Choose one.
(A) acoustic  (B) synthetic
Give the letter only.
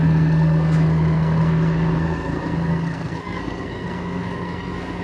B